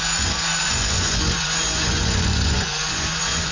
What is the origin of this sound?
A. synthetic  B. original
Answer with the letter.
A